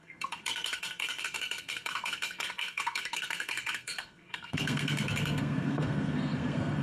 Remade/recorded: remade